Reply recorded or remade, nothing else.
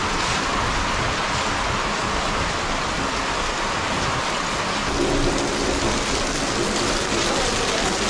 recorded